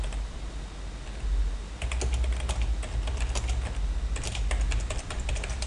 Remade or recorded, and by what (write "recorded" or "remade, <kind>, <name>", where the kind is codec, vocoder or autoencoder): recorded